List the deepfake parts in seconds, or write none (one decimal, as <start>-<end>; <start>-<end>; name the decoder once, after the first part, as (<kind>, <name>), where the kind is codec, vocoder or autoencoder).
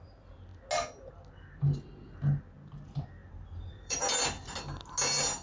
3.2-4.0 (vocoder, BigVGAN v2)